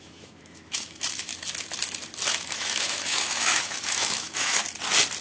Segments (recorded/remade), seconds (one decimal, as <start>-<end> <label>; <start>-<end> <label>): 0.0-1.3 remade; 1.3-2.3 recorded; 2.3-4.6 remade; 4.6-5.2 recorded

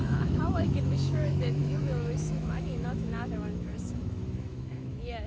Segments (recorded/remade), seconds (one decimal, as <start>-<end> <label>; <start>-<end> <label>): 0.0-5.3 remade

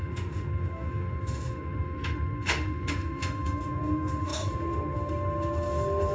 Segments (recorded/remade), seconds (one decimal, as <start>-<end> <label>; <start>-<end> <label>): 0.0-6.1 remade

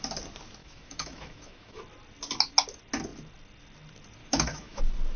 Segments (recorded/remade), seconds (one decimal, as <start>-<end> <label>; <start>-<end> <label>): 0.0-0.6 recorded; 0.6-1.8 remade; 1.8-4.2 recorded; 4.2-4.8 remade; 4.8-5.2 recorded